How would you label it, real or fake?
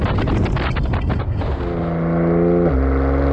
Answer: real